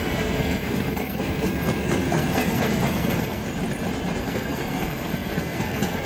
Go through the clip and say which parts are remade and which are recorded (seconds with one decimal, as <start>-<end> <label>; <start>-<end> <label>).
0.0-3.4 remade; 3.4-4.2 recorded; 4.2-6.1 remade